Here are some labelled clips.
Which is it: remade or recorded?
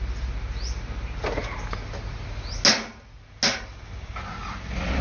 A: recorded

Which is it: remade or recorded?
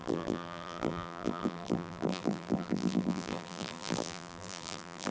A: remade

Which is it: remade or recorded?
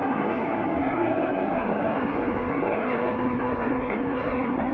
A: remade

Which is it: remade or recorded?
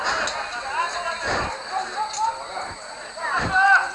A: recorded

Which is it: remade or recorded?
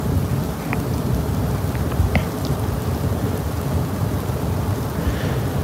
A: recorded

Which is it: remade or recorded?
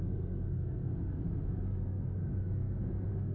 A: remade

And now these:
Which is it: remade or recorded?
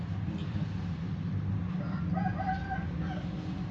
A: recorded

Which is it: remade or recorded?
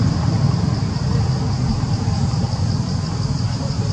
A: recorded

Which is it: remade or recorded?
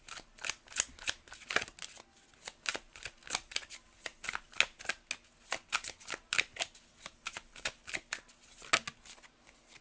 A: recorded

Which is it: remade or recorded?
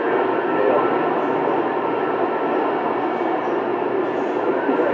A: recorded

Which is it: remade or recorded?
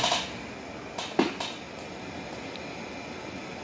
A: recorded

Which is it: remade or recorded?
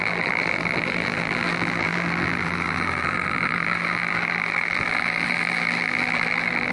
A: remade